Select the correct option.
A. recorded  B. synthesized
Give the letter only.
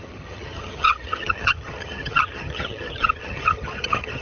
B